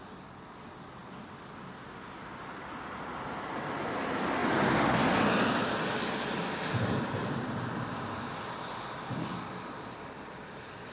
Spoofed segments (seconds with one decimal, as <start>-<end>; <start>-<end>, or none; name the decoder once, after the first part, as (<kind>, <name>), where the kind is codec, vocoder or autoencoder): 4.4-7.3 (vocoder, BigVGAN v2)